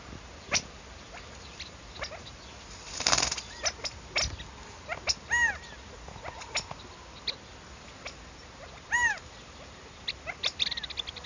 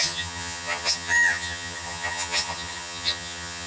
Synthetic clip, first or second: second